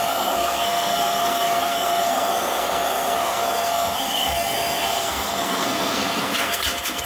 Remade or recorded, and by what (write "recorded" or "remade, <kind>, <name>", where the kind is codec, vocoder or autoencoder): remade, codec, SNAC